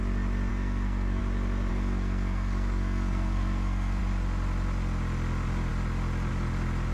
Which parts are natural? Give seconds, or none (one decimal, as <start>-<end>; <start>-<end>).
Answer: 0.0-0.5; 1.2-1.7; 4.0-6.9